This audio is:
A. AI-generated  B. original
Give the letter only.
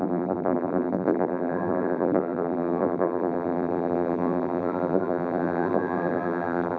A